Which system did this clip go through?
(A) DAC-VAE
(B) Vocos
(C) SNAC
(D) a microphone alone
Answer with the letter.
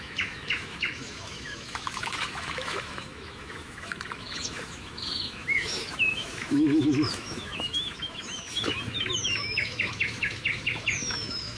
A